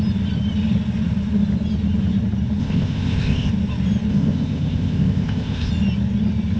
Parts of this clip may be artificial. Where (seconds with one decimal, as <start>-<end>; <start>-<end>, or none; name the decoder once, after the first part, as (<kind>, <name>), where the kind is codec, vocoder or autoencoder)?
2.6-3.5 (codec, ZipCodec); 4.1-5.7